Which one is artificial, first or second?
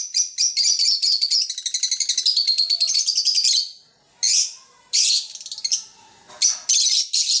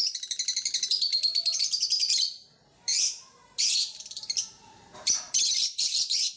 second